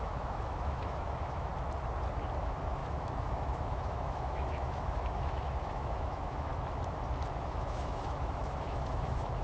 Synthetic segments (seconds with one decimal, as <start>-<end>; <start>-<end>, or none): 0.0-1.5; 2.4-6.5; 7.4-9.4